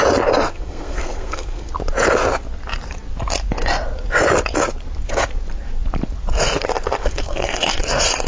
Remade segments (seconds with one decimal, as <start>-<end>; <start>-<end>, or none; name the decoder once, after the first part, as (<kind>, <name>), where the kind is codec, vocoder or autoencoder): 0.5-1.7 (codec, SNAC); 7.0-7.8